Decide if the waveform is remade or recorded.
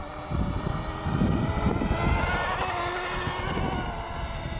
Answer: recorded